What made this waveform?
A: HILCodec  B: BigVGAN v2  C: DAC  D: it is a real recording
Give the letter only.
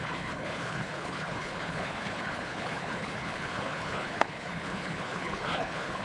A